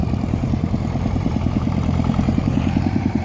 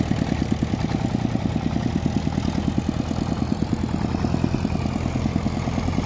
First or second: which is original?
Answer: second